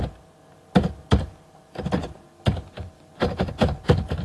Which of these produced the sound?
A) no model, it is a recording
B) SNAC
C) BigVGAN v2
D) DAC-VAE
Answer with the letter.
A